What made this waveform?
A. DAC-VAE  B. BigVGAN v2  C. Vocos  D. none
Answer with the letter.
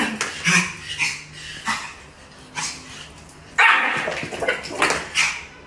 D